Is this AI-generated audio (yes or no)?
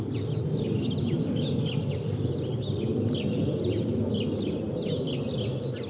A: no